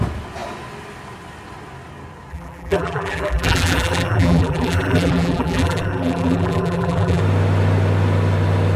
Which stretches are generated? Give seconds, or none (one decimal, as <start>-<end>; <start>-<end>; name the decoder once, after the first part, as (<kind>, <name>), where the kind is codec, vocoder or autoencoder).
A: 2.3-7.2 (vocoder, BigVGAN v2)